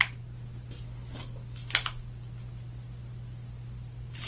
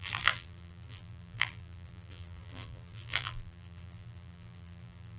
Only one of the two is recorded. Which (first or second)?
first